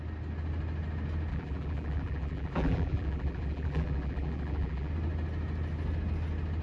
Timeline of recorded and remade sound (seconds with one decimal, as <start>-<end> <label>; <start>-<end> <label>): 0.0-1.3 recorded; 1.3-4.9 remade; 4.9-6.6 recorded